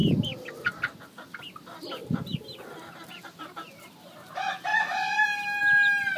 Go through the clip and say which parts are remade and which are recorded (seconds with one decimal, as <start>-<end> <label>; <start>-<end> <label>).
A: 0.0-2.3 recorded; 2.3-4.2 remade; 4.2-6.2 recorded